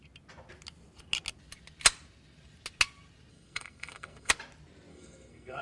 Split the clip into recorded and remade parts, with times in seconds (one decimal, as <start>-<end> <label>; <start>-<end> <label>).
0.0-3.3 recorded; 3.3-4.3 remade; 4.3-4.9 recorded; 4.9-5.6 remade